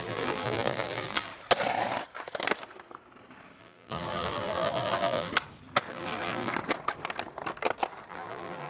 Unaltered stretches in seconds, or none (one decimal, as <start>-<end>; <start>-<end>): 1.3-3.6; 5.3-5.9; 6.5-8.1